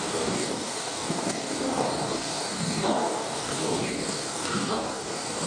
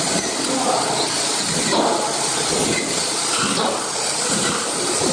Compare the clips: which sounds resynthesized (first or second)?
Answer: first